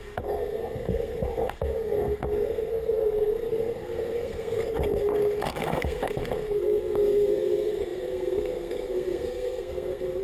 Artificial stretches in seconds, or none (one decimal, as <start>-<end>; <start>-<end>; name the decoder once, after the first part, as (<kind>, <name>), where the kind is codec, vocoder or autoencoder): 0.0-10.2 (codec, SNAC)